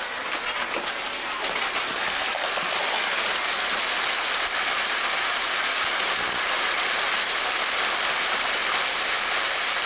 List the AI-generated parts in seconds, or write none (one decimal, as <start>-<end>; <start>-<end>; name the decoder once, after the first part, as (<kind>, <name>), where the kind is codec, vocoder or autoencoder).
none